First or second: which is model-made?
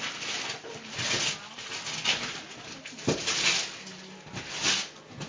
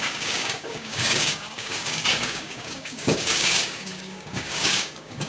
second